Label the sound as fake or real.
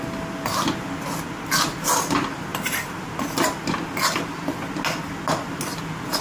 real